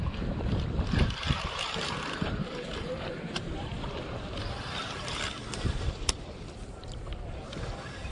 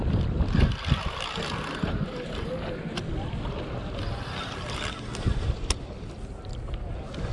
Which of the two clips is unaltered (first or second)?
second